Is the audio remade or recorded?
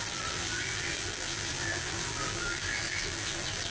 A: remade